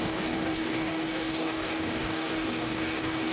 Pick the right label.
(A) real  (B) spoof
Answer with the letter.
B